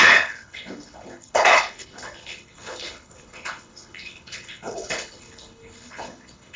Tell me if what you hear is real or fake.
fake